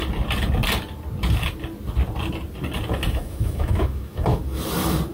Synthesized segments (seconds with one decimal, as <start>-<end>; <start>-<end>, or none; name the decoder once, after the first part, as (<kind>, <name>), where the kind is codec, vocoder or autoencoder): 3.1-4.4 (autoencoder, DAC-VAE)